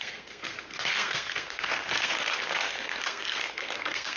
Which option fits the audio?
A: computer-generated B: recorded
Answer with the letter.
A